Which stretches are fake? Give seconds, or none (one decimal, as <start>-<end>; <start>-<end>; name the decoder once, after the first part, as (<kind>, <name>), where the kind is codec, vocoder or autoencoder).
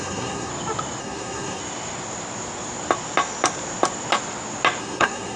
0.0-0.5 (codec, SNAC); 1.0-1.6; 4.8-5.4